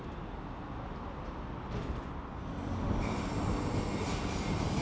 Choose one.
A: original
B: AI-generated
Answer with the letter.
A